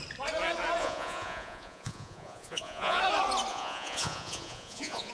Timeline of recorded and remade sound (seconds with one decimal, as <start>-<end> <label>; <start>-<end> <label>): 0.0-0.8 recorded; 0.8-3.0 remade; 3.0-3.5 recorded; 3.5-5.1 remade